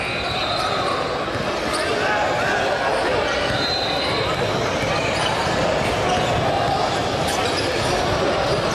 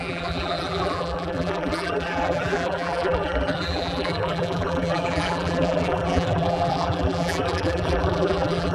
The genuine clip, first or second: first